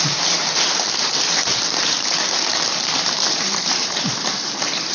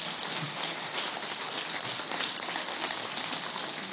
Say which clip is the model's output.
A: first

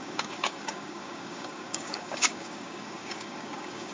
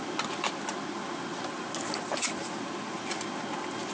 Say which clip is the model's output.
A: first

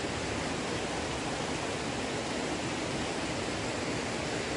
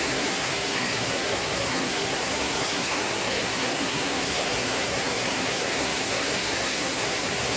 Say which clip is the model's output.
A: second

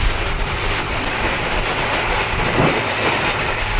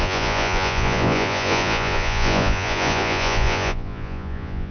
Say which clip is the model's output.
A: second